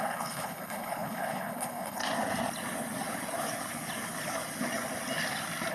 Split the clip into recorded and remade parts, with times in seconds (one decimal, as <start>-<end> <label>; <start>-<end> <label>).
0.0-2.0 remade; 2.0-5.7 recorded